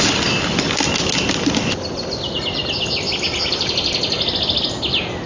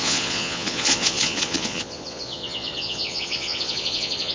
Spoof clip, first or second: second